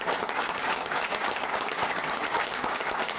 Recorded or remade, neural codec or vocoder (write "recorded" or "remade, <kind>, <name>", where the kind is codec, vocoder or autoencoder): remade, codec, DAC